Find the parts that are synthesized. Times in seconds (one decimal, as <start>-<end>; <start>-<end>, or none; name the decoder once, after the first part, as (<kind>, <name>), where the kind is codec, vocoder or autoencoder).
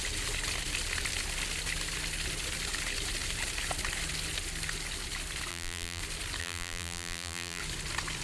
5.5-6.0 (vocoder, BigVGAN v2); 6.4-7.6